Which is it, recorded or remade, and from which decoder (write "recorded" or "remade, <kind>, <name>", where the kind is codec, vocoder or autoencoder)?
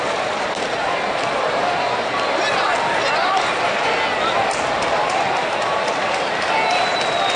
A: recorded